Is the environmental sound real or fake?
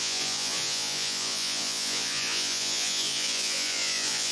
fake